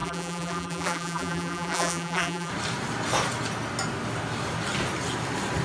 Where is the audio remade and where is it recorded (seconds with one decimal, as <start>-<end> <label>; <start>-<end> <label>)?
0.0-2.5 remade; 2.5-5.6 recorded